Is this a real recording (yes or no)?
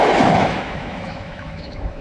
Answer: no